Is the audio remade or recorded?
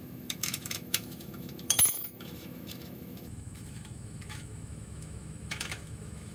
remade